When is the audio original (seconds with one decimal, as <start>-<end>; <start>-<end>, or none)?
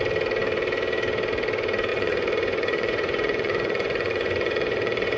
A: 0.0-1.9